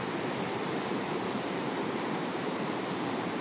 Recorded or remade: remade